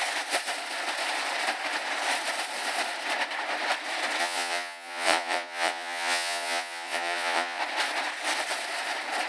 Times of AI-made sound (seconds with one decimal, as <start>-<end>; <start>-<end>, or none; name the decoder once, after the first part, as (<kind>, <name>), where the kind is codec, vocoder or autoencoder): 4.2-7.6 (vocoder, Vocos)